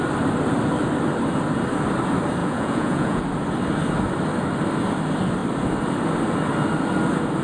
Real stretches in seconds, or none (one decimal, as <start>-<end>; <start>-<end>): 0.0-2.4; 3.2-7.4